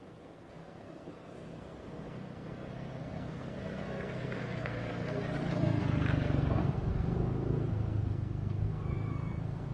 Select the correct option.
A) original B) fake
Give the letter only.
B